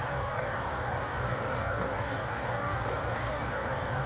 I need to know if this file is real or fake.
fake